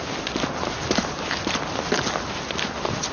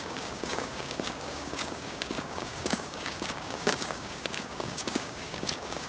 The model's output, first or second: second